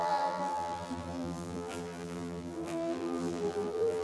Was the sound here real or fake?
fake